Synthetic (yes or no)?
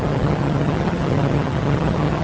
yes